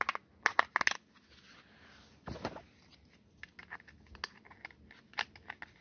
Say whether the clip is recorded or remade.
recorded